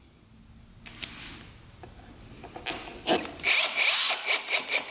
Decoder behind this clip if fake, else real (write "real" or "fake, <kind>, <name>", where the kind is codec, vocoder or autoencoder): real